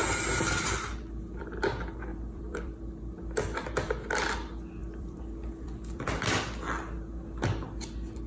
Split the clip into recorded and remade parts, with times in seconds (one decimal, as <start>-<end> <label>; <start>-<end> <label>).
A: 0.0-2.1 recorded; 2.1-2.8 remade; 2.8-4.8 recorded; 4.8-6.1 remade; 6.1-8.3 recorded